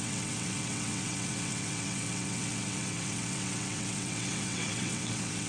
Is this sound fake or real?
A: fake